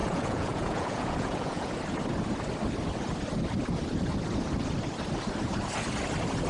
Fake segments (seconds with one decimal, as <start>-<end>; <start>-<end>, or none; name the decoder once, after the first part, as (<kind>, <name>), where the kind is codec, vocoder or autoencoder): 0.0-1.7 (vocoder, Vocos)